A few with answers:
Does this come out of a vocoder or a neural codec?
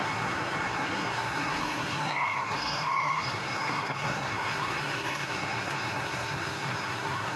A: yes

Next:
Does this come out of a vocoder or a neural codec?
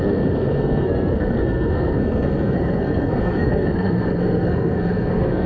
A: yes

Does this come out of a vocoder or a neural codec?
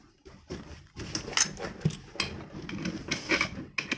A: no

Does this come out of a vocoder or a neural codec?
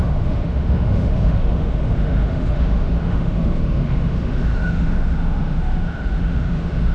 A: yes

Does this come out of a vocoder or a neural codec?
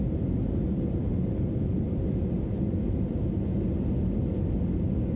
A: no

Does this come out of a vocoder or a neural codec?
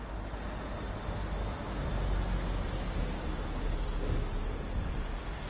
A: no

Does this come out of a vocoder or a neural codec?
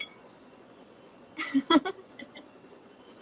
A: yes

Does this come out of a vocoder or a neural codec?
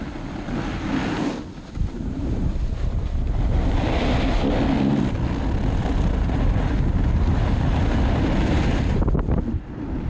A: no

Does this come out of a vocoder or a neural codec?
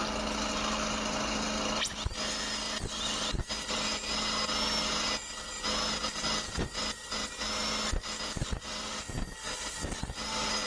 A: no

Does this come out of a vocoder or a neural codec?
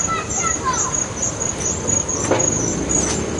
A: no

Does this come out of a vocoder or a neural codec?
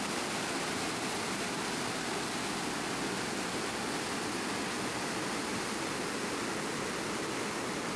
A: no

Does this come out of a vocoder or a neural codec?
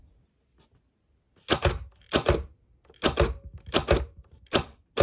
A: no